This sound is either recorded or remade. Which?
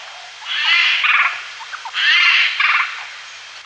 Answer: recorded